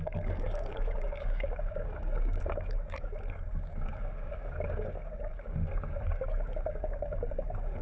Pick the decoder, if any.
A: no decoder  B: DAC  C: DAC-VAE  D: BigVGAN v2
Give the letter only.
B